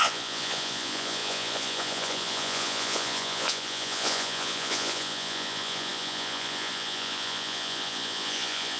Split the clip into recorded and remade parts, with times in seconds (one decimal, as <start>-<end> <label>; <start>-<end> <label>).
0.0-8.8 remade